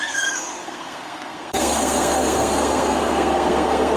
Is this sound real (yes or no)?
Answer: no